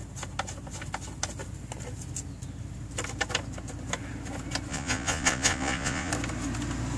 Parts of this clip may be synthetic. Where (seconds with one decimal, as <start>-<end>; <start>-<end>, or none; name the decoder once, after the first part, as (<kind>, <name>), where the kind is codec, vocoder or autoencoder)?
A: 4.7-6.1 (vocoder, Vocos)